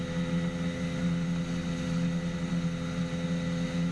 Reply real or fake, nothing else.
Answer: real